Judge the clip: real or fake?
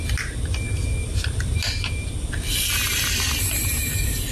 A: fake